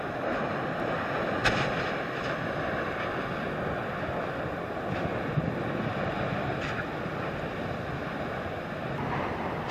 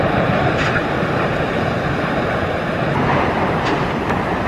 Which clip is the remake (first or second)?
second